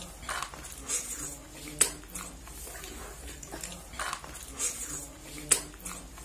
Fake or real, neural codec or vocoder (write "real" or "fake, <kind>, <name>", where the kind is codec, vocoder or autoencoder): real